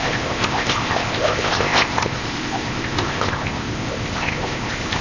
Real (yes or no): no